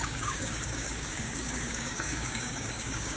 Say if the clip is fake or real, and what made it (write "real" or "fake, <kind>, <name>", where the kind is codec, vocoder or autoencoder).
fake, codec, DAC